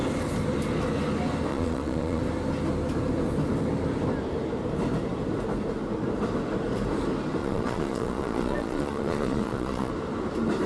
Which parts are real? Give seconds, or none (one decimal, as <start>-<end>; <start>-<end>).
0.0-1.5; 2.2-7.4; 9.9-10.7